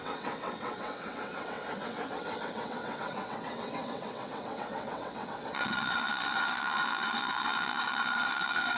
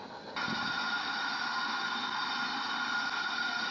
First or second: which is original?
second